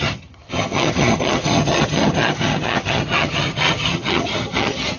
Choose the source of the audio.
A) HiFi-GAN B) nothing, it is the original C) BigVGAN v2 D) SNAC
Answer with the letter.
A